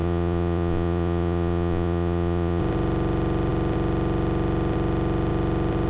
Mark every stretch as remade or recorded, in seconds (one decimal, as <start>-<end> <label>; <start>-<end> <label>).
0.0-2.6 remade; 2.6-5.9 recorded

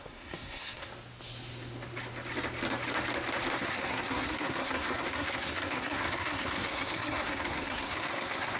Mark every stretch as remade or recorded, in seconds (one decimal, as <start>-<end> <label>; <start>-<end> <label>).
0.0-0.9 remade; 0.9-3.6 recorded; 3.6-8.6 remade

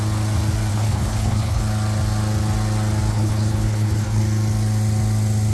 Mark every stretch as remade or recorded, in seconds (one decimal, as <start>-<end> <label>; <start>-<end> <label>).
0.0-0.7 recorded; 0.7-1.6 remade; 1.6-3.1 recorded; 3.1-4.2 remade; 4.2-5.5 recorded

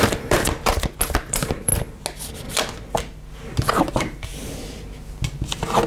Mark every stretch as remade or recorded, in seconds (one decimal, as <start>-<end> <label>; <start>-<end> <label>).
0.0-0.7 remade; 0.7-1.2 recorded; 1.2-1.7 remade; 1.7-3.9 recorded; 3.9-4.3 remade; 4.3-5.9 recorded

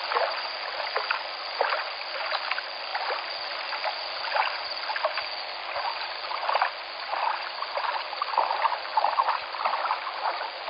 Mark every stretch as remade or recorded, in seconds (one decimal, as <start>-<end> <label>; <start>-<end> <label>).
0.0-10.7 recorded